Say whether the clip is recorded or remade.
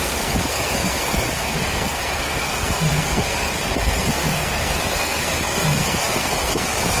remade